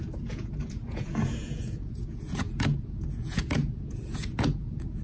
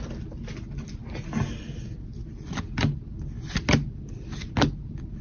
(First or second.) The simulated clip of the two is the first